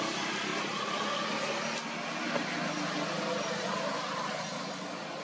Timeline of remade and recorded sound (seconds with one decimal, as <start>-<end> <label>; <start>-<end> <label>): 0.0-5.2 recorded